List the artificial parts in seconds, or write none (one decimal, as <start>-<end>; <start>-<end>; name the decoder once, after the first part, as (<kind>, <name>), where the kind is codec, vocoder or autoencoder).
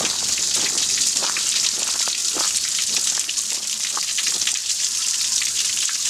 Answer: 1.2-1.7 (vocoder, BigVGAN v2); 2.2-2.7; 4.6-6.1